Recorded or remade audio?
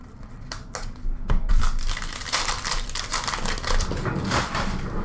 recorded